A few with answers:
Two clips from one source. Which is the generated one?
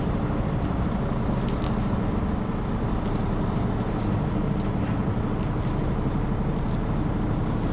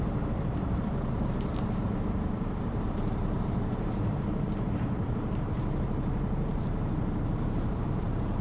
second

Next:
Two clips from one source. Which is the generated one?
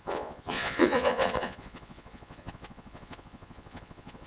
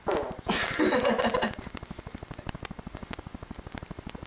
first